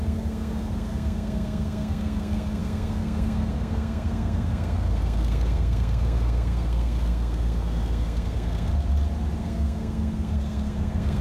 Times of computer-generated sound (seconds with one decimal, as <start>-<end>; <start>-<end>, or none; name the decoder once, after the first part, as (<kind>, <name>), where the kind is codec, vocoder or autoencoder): 0.0-8.7 (codec, SNAC); 9.4-11.2